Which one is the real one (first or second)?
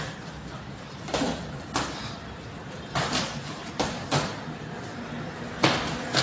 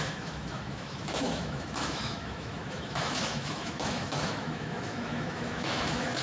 first